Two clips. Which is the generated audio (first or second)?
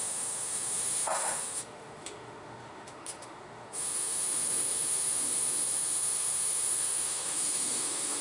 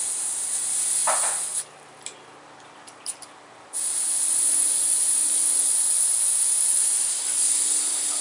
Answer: first